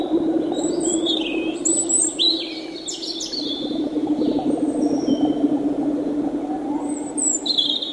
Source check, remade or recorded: recorded